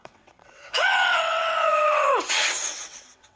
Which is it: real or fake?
fake